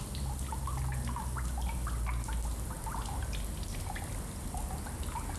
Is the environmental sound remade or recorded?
recorded